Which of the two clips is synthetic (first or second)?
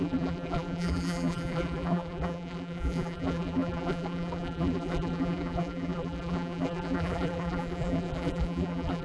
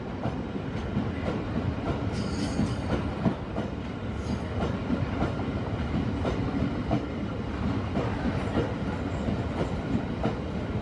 first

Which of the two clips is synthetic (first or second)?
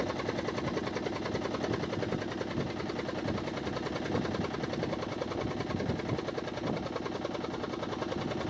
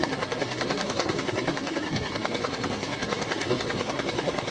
second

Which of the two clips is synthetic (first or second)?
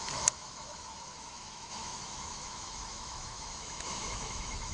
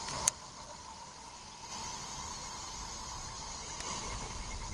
first